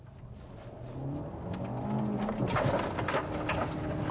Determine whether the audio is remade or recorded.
recorded